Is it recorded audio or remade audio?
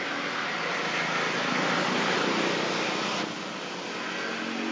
recorded